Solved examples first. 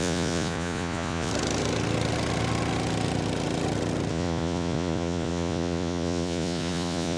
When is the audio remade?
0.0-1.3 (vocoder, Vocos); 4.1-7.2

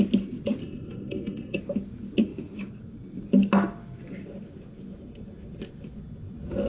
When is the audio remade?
0.6-1.6 (codec, SNAC)

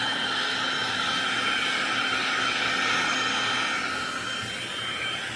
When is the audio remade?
0.0-3.3 (codec, DAC); 5.0-5.4

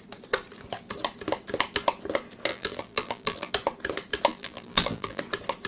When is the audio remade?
2.5-3.5 (vocoder, BigVGAN v2); 4.3-5.2

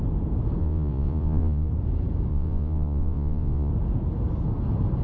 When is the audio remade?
0.6-1.7 (vocoder, Vocos); 2.3-3.7